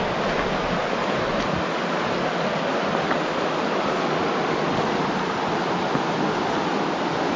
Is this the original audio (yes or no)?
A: yes